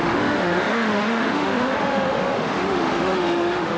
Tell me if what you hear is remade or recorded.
remade